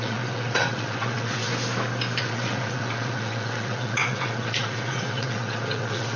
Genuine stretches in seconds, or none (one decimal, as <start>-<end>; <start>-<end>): 1.5-2.2